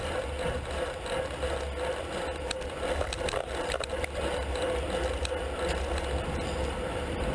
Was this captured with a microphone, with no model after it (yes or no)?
yes